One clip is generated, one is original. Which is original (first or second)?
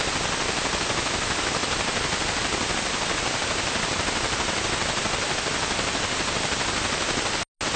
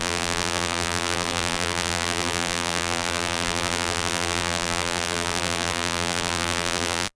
first